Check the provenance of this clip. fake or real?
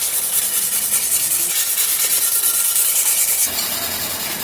real